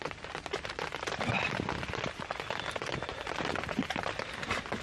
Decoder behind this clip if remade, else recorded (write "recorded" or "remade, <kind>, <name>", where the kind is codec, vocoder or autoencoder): remade, vocoder, BigVGAN v2